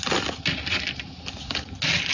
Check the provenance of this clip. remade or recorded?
recorded